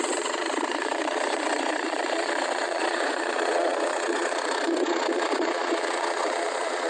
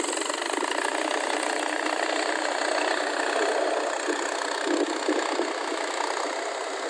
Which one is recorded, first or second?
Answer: second